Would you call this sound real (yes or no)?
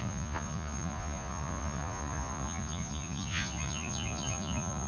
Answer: no